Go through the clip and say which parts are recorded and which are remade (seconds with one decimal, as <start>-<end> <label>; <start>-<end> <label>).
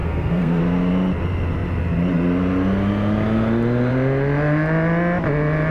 0.0-0.6 remade; 0.6-5.7 recorded